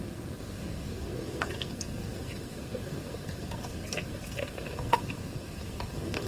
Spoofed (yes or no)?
yes